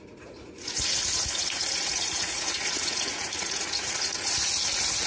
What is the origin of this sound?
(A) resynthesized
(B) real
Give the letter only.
A